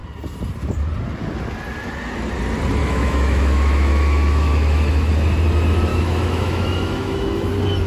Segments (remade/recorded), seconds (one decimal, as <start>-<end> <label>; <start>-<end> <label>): 0.0-2.8 recorded; 2.8-5.1 remade; 5.1-5.9 recorded; 5.9-7.5 remade; 7.5-7.9 recorded